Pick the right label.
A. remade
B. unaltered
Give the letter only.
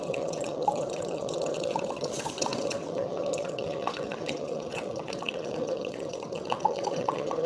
A